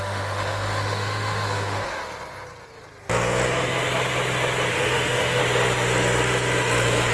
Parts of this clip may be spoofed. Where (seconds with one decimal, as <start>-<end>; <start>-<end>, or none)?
0.0-2.0; 4.7-5.4